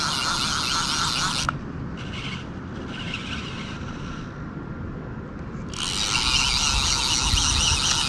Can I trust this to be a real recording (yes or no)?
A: yes